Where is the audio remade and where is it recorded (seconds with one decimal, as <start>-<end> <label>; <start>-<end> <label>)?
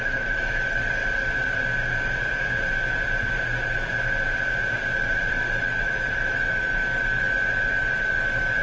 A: 0.0-1.0 remade; 1.0-5.3 recorded; 5.3-8.6 remade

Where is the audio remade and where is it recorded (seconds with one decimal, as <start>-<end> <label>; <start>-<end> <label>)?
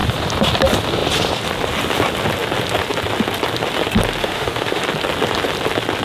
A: 0.0-4.2 recorded; 4.2-4.8 remade; 4.8-6.0 recorded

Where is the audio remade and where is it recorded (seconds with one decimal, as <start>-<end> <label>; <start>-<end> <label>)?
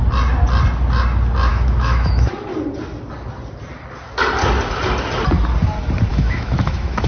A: 0.0-1.5 recorded; 1.5-2.3 remade; 2.3-6.1 recorded; 6.1-7.1 remade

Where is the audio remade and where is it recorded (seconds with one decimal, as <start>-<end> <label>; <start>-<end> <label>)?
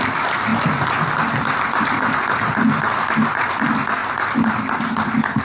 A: 0.0-5.4 recorded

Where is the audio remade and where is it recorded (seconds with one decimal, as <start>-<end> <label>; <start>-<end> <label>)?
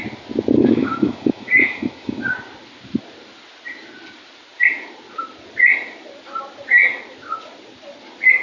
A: 0.0-0.6 recorded; 0.6-2.3 remade; 2.3-8.4 recorded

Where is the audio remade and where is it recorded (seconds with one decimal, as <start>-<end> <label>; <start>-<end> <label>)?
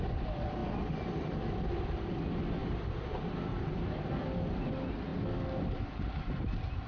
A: 0.0-6.9 recorded